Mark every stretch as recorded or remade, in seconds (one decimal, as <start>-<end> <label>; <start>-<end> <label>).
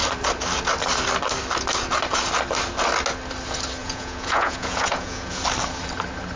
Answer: 0.0-3.8 recorded; 3.8-5.4 remade; 5.4-6.4 recorded